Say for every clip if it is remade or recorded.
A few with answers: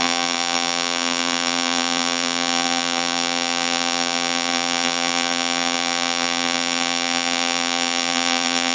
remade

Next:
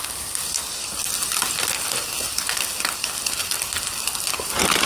recorded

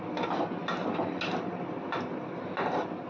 recorded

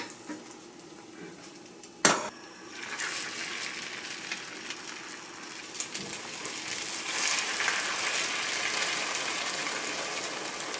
recorded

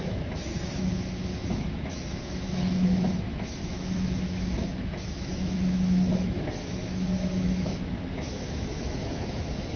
remade